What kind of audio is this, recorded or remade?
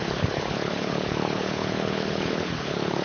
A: remade